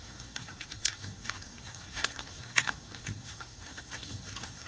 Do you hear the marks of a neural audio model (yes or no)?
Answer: yes